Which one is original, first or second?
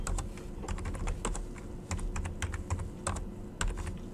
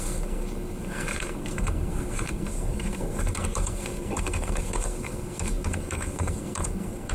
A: first